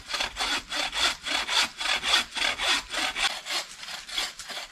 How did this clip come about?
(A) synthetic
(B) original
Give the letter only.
B